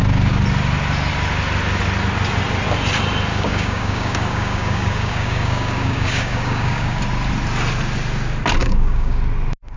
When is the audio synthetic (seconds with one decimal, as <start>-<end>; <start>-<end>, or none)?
3.3-7.0; 8.6-9.2